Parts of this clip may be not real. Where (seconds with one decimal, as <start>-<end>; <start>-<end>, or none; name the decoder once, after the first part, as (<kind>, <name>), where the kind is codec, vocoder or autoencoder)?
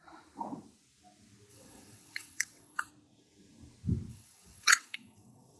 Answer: 1.5-2.9 (vocoder, WaveNeXt); 4.1-5.6